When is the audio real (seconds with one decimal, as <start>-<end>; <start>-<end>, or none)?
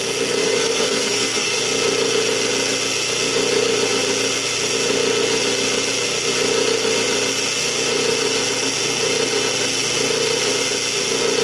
0.0-0.4; 1.6-11.4